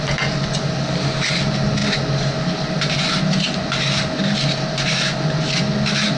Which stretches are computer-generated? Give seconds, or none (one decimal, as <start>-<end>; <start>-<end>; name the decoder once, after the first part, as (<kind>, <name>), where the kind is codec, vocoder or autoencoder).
none